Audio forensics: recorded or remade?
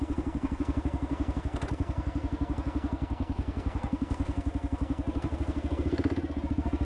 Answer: remade